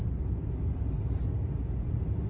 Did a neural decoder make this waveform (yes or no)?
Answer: no